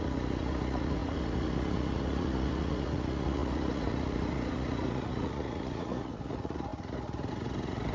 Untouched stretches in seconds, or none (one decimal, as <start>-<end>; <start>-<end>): none